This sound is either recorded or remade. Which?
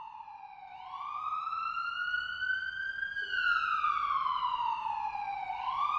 recorded